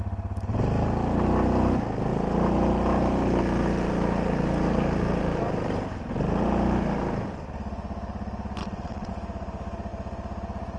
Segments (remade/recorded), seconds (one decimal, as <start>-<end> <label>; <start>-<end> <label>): 0.0-8.6 recorded; 8.6-9.1 remade; 9.1-10.8 recorded